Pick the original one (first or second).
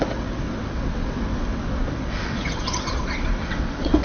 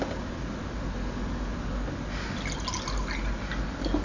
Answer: second